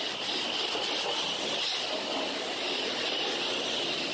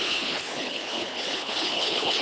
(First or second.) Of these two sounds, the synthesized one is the second